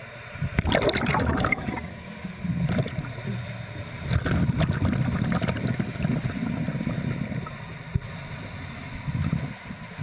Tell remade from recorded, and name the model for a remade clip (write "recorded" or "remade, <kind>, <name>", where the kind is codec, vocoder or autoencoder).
recorded